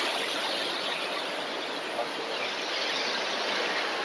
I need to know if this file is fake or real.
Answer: real